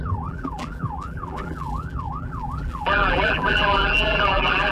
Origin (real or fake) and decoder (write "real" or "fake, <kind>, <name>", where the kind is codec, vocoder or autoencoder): fake, vocoder, BigVGAN v2